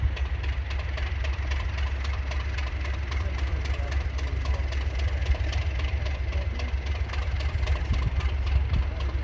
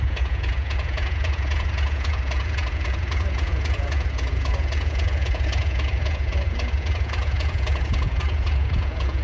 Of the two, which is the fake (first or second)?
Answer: second